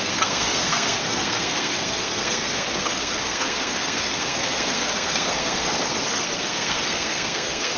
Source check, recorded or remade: remade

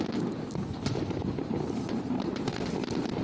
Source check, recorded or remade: recorded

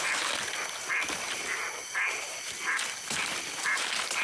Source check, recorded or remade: recorded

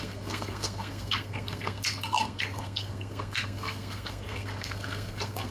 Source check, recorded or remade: remade